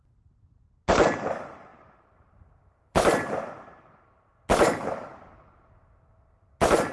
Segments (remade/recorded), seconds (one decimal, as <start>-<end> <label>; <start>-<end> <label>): 0.0-1.7 recorded; 1.7-4.0 remade; 4.0-6.9 recorded